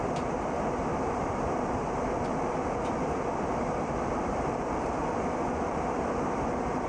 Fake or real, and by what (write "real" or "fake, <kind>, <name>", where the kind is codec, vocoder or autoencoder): fake, vocoder, BigVGAN v2